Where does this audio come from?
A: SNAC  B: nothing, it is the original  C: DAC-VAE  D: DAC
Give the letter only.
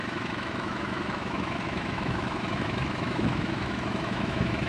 C